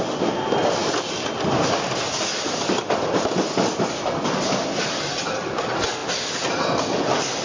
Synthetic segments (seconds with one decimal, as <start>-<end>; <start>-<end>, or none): none